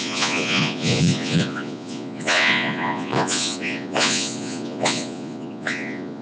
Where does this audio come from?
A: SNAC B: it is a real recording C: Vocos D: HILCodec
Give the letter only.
C